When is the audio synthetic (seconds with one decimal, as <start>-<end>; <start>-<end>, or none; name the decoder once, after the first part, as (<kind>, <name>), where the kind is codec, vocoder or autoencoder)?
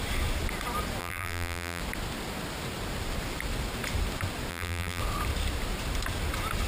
1.0-1.8 (vocoder, BigVGAN v2); 4.5-5.0